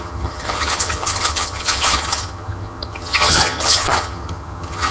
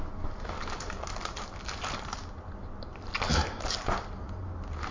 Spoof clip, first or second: first